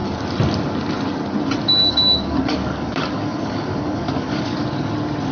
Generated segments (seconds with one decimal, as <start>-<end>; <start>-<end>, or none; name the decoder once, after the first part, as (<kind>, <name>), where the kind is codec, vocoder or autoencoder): 1.8-4.6 (codec, DAC)